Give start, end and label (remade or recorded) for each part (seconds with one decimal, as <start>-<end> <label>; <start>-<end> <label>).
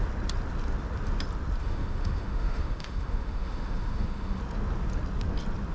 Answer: 0.0-1.6 recorded; 1.6-4.4 remade; 4.4-5.7 recorded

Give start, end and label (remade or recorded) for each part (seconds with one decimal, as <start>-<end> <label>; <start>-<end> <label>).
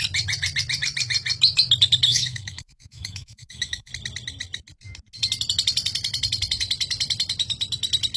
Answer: 0.0-2.1 recorded; 2.1-3.9 remade; 3.9-8.2 recorded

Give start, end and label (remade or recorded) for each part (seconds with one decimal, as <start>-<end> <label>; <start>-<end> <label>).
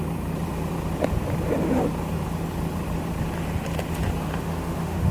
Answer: 0.0-4.3 recorded; 4.3-5.1 remade